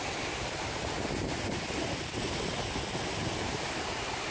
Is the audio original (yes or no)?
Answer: yes